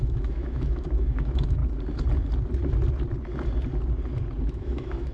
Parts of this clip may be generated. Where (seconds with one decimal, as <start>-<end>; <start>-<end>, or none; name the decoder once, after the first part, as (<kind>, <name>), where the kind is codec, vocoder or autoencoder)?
0.0-1.6 (autoencoder, DAC-VAE); 4.4-5.1